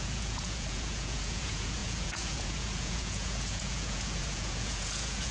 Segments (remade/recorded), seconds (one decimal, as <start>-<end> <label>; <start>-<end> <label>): 0.0-5.3 remade